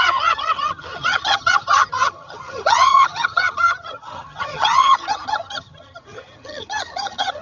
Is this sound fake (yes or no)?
yes